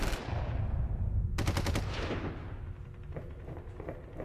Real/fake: real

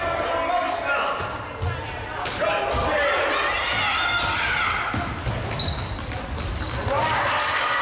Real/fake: real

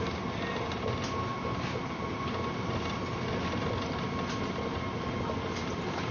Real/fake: real